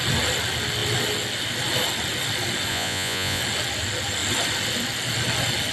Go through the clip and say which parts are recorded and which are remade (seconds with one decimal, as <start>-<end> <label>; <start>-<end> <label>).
0.0-2.7 recorded; 2.7-3.4 remade; 3.4-5.7 recorded